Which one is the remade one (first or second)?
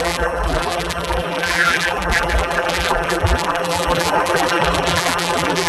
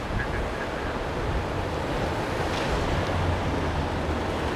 first